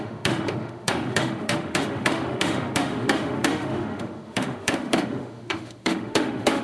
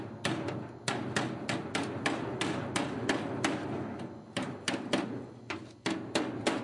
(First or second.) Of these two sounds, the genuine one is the second